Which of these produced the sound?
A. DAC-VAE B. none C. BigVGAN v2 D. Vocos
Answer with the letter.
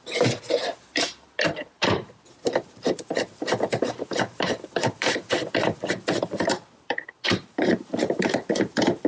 C